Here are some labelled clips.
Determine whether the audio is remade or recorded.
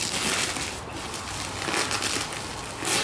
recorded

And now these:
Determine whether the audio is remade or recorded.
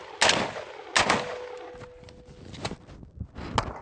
recorded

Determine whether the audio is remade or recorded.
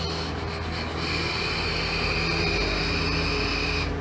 recorded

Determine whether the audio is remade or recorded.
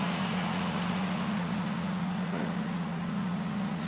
remade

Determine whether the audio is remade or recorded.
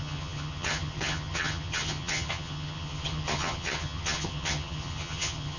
remade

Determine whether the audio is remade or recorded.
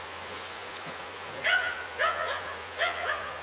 remade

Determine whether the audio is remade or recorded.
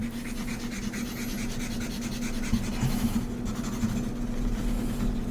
recorded